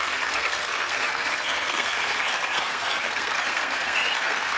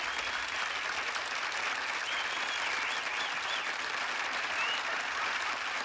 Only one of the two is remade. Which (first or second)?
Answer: first